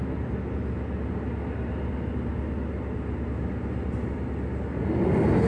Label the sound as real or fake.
real